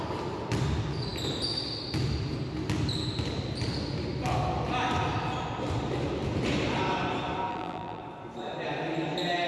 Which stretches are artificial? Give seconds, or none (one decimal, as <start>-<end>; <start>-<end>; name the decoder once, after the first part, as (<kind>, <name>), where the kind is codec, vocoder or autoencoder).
7.5-8.0 (vocoder, BigVGAN v2)